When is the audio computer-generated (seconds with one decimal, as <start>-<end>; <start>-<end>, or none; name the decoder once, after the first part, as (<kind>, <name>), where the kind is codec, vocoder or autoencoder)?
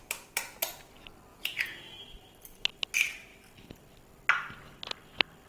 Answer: 1.3-1.9 (vocoder, Vocos)